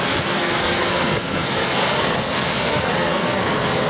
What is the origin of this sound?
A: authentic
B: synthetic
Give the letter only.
B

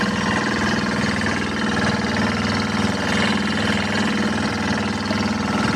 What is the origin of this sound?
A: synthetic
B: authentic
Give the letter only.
B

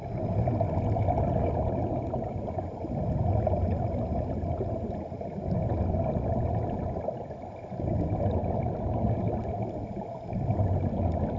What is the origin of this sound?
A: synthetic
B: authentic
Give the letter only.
B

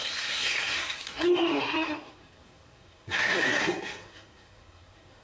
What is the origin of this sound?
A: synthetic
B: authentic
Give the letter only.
A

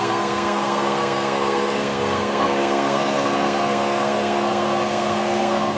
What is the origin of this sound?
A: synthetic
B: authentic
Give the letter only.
A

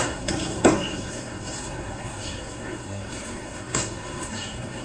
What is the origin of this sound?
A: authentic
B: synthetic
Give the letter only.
B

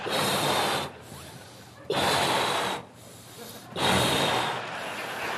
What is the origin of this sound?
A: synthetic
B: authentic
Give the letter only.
B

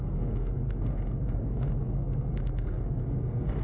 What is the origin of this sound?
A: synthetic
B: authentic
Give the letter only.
A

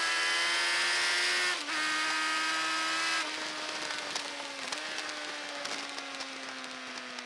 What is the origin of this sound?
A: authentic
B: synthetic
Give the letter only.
A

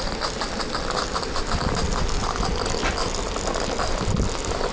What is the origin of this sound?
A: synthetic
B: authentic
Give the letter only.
B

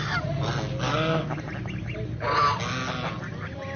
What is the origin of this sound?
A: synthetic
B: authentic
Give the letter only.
B